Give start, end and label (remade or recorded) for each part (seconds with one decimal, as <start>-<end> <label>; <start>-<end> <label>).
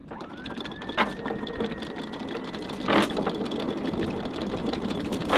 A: 0.0-3.2 remade; 3.2-4.6 recorded; 4.6-5.4 remade